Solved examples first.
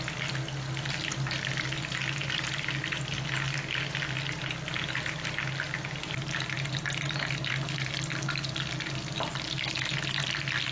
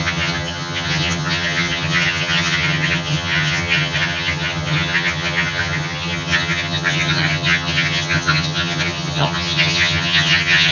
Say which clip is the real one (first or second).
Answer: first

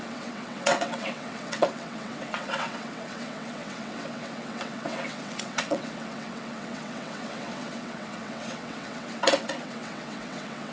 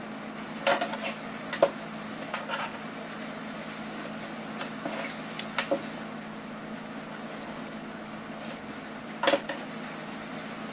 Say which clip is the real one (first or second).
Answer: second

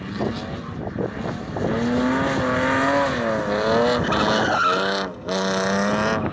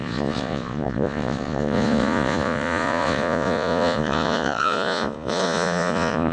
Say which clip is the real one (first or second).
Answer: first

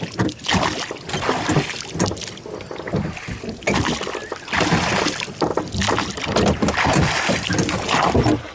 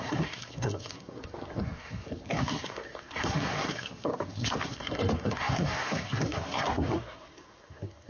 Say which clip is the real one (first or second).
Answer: first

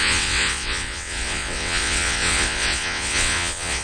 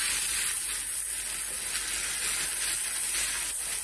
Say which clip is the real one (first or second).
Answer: second